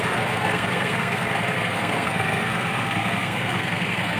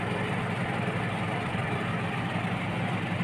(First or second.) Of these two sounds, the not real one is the first